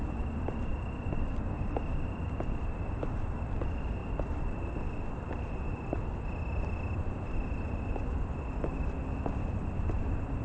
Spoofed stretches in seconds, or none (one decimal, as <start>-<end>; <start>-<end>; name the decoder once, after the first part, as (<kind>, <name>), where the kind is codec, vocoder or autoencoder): 4.0-6.1 (vocoder, BigVGAN v2)